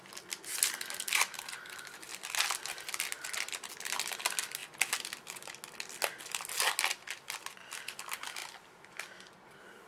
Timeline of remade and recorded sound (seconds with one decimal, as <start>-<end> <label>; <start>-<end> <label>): 0.0-9.9 recorded